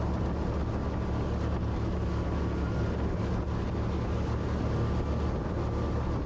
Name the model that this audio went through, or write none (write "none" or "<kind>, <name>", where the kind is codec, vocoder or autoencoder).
none